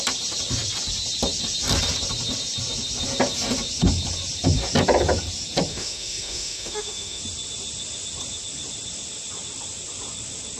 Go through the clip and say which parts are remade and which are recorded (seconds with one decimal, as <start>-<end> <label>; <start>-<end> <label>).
0.0-5.7 recorded; 5.7-7.2 remade; 7.2-10.6 recorded

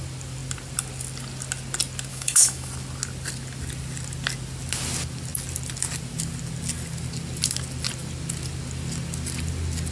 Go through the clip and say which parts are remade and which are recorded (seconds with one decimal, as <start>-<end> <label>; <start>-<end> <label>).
0.0-2.1 recorded; 2.1-2.7 remade; 2.7-9.9 recorded